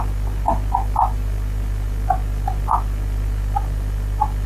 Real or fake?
real